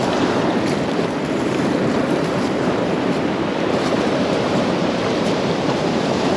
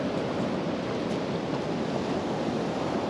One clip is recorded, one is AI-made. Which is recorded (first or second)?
second